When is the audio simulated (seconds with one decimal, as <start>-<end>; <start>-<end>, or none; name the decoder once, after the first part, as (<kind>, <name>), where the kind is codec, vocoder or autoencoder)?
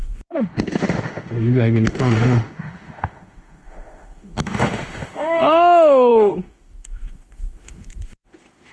0.0-8.7 (autoencoder, DAC-VAE)